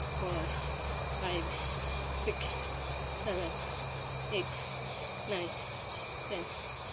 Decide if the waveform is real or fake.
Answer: real